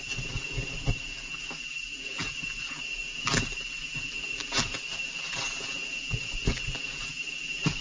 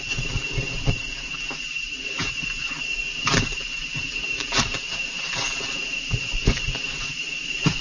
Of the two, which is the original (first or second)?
first